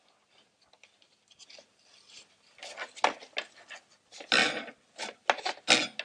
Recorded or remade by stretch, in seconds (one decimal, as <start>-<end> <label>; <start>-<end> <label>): 0.0-6.0 recorded